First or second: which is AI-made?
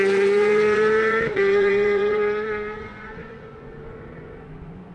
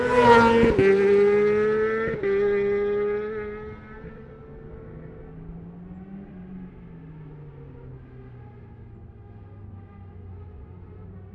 first